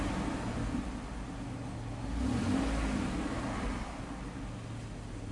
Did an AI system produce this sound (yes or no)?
no